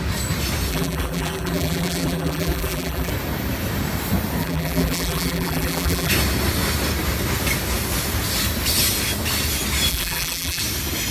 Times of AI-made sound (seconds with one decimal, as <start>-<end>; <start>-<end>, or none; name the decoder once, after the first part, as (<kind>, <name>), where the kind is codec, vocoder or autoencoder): 0.7-3.1 (vocoder, BigVGAN v2); 4.4-6.1; 9.9-10.6